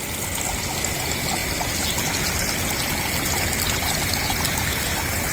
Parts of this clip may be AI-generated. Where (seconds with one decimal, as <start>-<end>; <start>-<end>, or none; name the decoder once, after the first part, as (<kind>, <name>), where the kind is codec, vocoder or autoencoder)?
none